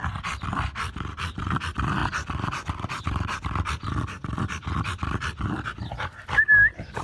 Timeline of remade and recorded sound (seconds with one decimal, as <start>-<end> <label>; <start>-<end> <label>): 0.0-7.0 remade